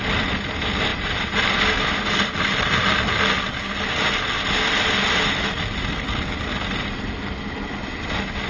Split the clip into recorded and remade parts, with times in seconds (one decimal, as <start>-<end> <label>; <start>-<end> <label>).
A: 0.0-0.9 recorded; 0.9-1.5 remade; 1.5-8.5 recorded